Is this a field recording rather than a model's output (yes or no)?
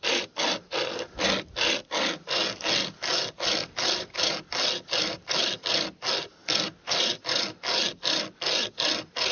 yes